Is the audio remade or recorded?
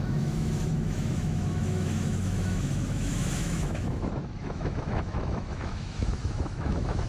remade